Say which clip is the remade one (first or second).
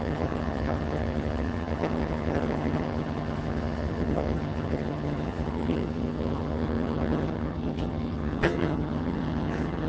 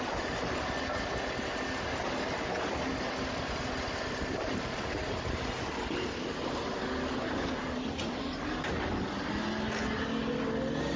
first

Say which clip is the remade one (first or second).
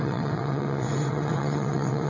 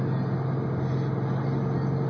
first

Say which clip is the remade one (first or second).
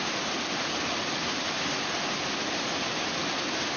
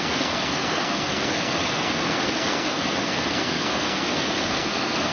second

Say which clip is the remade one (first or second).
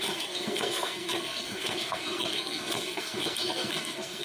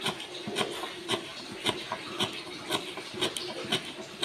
first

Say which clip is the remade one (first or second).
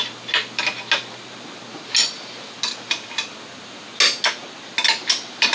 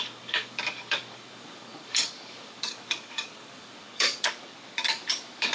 second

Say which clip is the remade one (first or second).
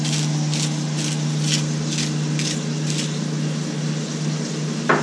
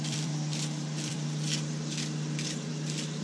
second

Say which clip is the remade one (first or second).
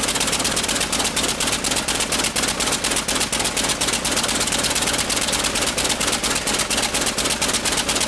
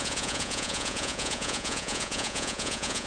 second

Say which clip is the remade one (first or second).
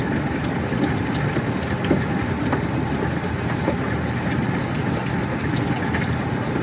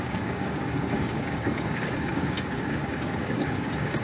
second